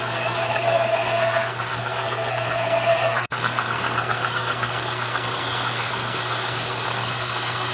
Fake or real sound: fake